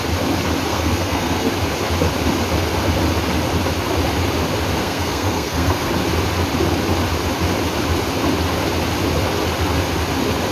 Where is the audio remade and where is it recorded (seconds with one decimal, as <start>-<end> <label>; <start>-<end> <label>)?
0.0-0.7 recorded; 0.7-1.5 remade; 1.5-4.8 recorded; 4.8-5.9 remade; 5.9-10.5 recorded